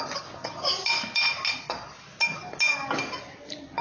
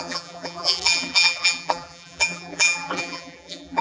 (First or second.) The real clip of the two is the first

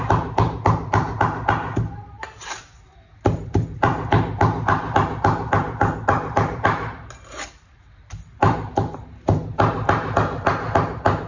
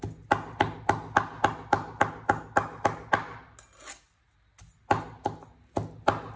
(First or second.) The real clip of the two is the second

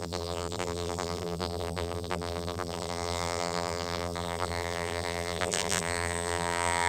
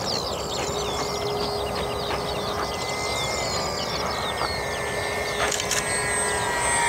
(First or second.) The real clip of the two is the second